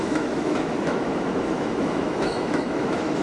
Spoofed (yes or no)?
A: yes